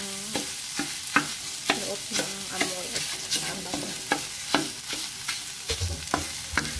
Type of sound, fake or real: real